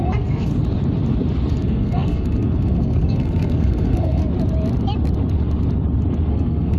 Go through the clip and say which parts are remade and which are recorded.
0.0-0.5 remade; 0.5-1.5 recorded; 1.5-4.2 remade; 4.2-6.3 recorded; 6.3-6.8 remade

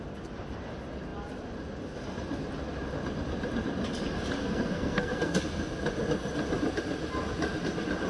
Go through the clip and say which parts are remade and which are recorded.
0.0-4.4 recorded; 4.4-5.4 remade; 5.4-8.1 recorded

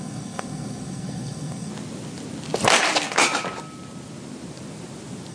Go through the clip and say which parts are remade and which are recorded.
0.0-1.7 remade; 1.7-5.3 recorded

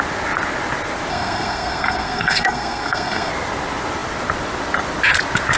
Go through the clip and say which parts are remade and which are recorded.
0.0-1.1 recorded; 1.1-3.3 remade; 3.3-5.6 recorded

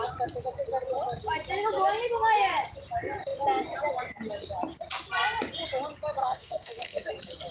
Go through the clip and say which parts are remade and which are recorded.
0.0-6.2 recorded; 6.2-7.1 remade; 7.1-7.5 recorded